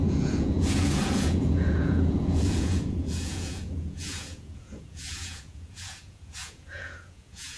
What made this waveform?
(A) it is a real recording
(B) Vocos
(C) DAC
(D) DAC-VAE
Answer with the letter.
B